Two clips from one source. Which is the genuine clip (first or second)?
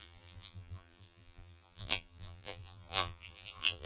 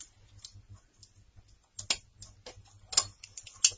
second